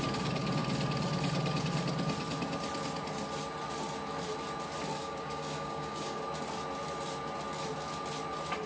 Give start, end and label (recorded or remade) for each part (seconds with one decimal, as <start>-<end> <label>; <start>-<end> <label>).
0.0-5.0 recorded; 5.0-6.2 remade; 6.2-8.7 recorded